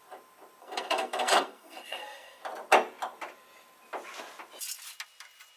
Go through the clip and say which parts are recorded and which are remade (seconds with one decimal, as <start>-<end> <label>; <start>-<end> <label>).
0.0-0.6 recorded; 0.6-2.4 remade; 2.4-5.6 recorded